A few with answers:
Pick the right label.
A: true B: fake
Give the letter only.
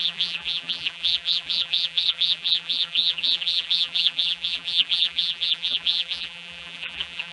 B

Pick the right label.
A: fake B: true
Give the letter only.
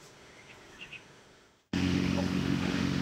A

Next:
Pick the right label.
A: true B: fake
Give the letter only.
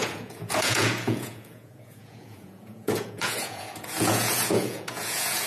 B